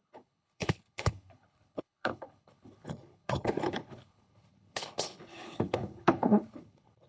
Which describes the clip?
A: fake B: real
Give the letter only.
A